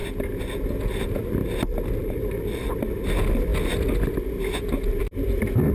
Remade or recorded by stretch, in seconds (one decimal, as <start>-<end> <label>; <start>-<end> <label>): 0.0-2.0 recorded; 2.0-2.7 remade; 2.7-5.7 recorded